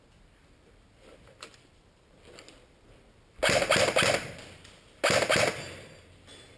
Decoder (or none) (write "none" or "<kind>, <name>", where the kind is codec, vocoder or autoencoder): none